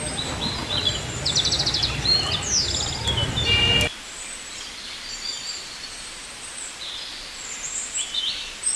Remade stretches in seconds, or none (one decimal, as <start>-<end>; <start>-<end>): 5.3-6.7